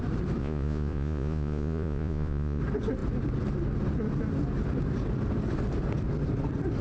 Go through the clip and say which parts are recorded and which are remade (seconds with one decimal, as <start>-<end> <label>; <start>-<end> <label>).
0.0-0.4 recorded; 0.4-2.6 remade; 2.6-6.8 recorded